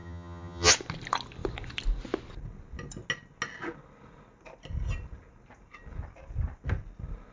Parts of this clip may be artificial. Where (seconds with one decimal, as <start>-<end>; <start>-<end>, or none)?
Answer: 0.0-0.7